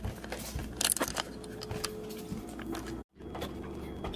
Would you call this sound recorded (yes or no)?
yes